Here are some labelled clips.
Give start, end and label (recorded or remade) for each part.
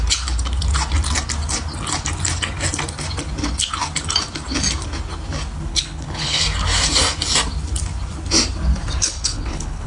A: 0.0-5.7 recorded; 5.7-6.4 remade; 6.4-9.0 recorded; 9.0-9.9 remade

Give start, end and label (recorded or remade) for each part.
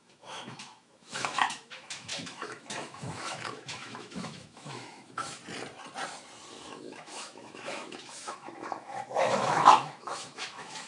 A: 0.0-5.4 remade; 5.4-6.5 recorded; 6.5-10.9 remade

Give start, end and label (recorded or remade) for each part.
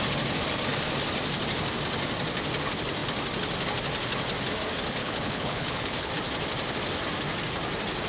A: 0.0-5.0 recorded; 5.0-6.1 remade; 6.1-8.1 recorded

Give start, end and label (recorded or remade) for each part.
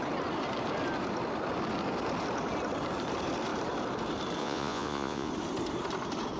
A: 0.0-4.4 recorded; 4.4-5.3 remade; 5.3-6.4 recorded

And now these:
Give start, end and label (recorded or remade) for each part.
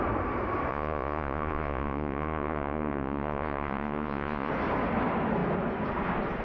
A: 0.0-0.7 recorded; 0.7-4.5 remade; 4.5-6.4 recorded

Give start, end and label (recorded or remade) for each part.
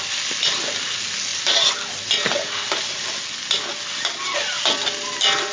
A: 0.0-5.5 recorded